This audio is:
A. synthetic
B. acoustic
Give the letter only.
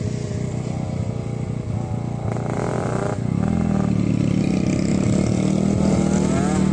B